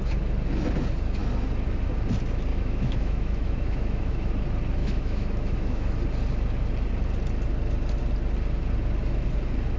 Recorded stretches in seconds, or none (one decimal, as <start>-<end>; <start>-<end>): 0.0-2.5; 4.3-4.8; 5.9-9.8